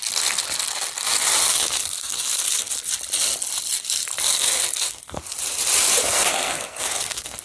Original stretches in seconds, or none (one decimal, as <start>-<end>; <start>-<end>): 0.0-1.4; 2.9-4.3; 5.4-6.0